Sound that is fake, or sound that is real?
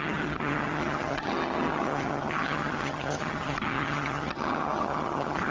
fake